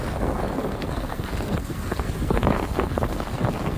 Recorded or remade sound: remade